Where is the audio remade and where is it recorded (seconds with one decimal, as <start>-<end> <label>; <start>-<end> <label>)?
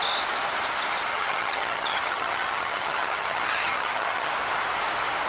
0.0-1.1 recorded; 1.1-4.3 remade; 4.3-5.3 recorded